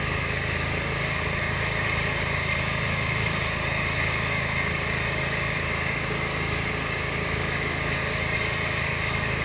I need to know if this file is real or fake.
fake